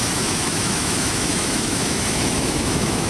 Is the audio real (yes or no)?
no